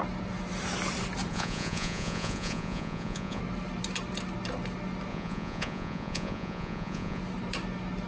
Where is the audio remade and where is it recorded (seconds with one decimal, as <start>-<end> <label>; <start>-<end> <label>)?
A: 0.0-1.3 recorded; 1.3-3.4 remade; 3.4-5.1 recorded; 5.1-7.2 remade; 7.2-8.1 recorded